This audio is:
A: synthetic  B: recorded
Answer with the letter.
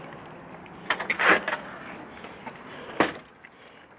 B